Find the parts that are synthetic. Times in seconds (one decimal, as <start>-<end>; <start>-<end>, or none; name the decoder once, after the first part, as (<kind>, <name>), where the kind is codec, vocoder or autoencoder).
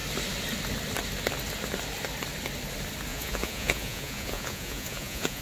3.1-5.4 (vocoder, Vocos)